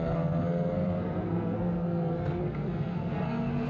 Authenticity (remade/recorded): remade